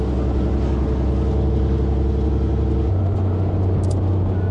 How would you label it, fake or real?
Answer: real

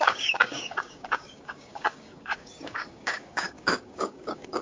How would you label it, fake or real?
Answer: fake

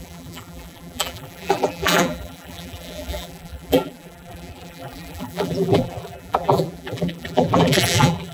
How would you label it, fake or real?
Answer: fake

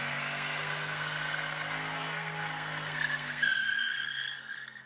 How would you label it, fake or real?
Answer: fake